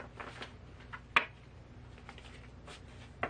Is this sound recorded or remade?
recorded